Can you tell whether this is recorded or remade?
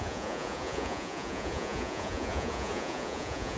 remade